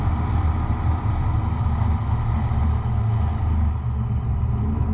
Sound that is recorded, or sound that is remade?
recorded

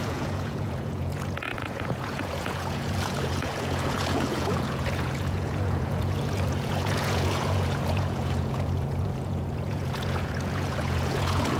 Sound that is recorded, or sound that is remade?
remade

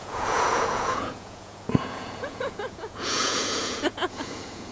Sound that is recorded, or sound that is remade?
remade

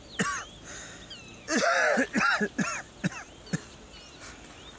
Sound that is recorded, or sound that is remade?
recorded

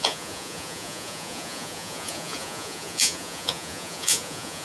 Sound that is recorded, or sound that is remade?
remade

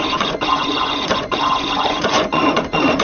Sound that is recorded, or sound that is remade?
remade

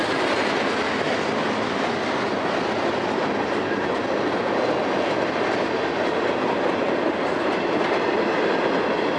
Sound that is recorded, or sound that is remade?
recorded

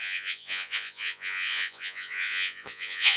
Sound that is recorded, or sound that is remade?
remade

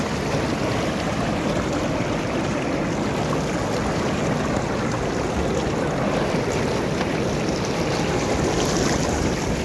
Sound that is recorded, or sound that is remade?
recorded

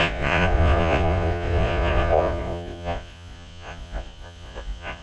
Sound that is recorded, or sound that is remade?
remade